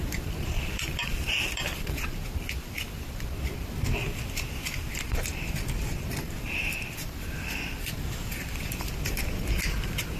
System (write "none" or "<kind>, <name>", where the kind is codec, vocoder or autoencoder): vocoder, BigVGAN v2